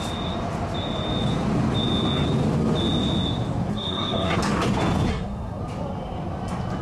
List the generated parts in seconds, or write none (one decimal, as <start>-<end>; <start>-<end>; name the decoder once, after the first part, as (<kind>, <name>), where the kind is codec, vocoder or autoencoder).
3.7-4.4 (codec, SNAC); 5.1-5.6

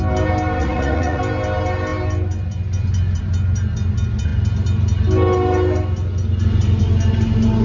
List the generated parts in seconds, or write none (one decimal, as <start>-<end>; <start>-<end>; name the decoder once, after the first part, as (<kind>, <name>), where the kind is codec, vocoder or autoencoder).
0.6-1.2 (vocoder, Vocos)

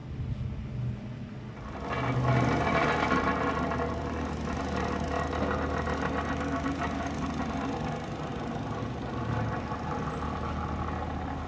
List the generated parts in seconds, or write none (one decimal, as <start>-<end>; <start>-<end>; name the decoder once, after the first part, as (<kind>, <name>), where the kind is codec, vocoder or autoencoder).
none

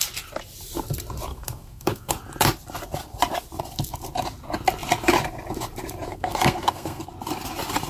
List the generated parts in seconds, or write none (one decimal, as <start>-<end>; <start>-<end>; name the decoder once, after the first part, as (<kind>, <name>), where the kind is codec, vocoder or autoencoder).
1.3-2.1 (codec, SNAC); 6.1-7.1

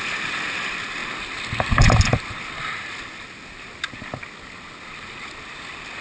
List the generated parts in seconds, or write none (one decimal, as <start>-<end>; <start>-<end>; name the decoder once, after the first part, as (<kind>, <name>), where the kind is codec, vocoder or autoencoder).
none

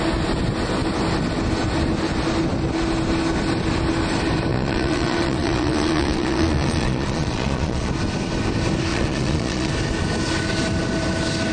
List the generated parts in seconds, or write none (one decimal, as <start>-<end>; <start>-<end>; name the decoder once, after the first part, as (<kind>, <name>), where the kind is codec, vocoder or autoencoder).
4.5-7.9 (vocoder, Vocos); 8.9-9.7